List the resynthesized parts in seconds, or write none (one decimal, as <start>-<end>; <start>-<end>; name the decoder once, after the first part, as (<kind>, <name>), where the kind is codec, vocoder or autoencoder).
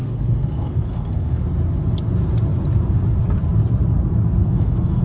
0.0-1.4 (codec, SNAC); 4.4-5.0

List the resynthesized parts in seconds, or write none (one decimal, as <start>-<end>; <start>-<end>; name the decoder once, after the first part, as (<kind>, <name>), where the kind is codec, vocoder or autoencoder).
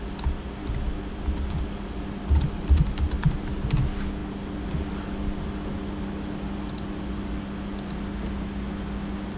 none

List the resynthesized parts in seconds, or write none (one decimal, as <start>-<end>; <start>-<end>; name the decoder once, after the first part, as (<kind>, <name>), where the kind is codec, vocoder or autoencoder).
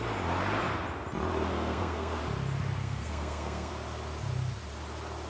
1.5-2.2 (codec, SNAC); 2.8-3.7